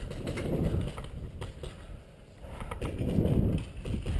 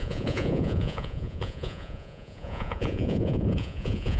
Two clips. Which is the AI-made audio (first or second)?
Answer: second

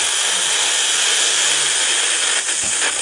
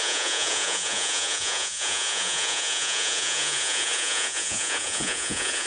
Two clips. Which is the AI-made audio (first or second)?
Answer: second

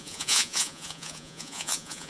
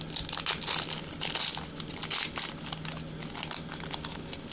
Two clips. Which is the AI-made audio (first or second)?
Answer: first